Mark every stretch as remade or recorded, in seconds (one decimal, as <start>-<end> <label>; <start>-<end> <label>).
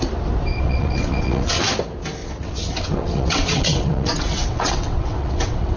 0.0-0.5 recorded; 0.5-1.7 remade; 1.7-2.2 recorded; 2.2-5.8 remade